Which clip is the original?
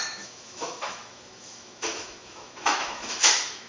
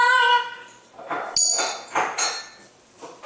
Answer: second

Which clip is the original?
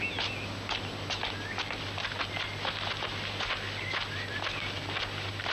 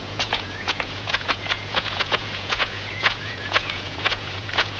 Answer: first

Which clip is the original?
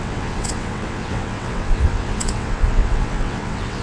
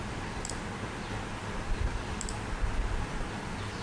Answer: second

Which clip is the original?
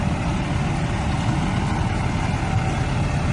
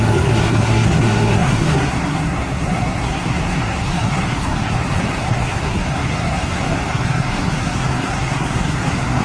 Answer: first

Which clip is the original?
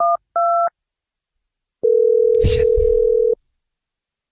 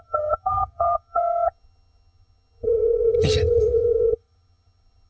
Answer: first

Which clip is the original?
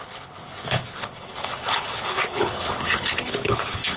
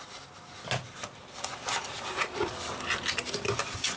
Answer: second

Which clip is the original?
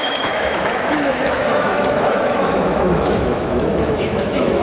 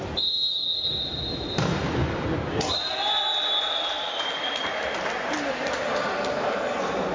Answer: second